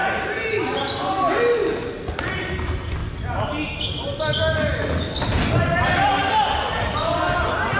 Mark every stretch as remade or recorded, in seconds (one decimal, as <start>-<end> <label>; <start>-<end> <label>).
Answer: 0.0-1.9 recorded; 1.9-3.0 remade; 3.0-5.6 recorded; 5.6-7.8 remade